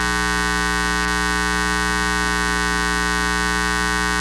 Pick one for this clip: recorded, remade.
recorded